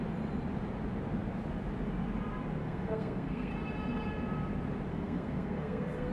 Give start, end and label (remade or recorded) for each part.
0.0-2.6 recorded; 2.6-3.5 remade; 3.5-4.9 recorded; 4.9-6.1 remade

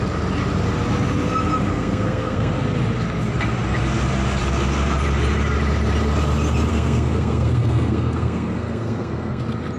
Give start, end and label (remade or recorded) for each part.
0.0-1.7 recorded; 1.7-2.5 remade; 2.5-6.7 recorded; 6.7-9.4 remade; 9.4-9.8 recorded

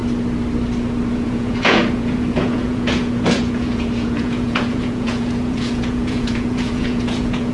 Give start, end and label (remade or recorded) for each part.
0.0-1.1 recorded; 1.1-7.5 remade

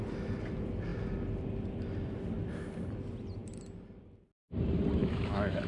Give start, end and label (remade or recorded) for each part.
0.0-5.0 recorded; 5.0-5.7 remade

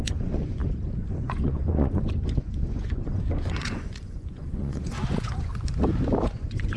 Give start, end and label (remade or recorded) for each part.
0.0-0.6 remade; 0.6-1.1 recorded; 1.1-5.5 remade; 5.5-6.2 recorded; 6.2-6.8 remade

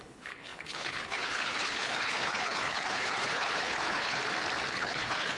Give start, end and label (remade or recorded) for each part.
0.0-4.2 remade; 4.2-4.7 recorded; 4.7-5.4 remade